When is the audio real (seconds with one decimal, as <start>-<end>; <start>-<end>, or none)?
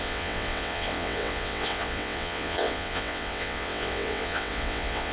none